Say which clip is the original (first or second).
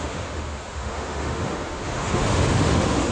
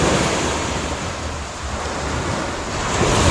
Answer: second